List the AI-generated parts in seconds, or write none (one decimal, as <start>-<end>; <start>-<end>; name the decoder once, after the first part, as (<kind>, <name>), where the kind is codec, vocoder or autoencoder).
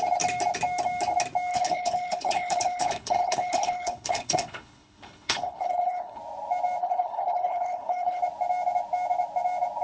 1.5-6.2 (codec, HILCodec); 6.8-8.2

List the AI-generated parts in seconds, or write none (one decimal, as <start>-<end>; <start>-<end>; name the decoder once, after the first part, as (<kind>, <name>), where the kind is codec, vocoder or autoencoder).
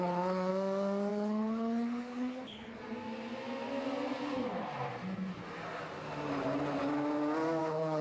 0.0-0.5 (codec, HILCodec); 1.1-2.8; 7.6-8.0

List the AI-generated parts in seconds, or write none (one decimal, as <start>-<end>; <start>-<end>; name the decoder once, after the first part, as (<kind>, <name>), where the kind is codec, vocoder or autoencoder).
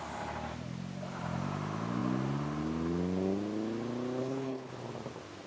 4.2-4.7 (codec, HILCodec)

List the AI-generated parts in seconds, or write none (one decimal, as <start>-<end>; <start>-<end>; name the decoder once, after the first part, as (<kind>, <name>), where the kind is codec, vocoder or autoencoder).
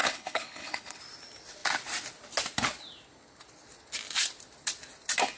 0.0-1.0 (codec, HILCodec)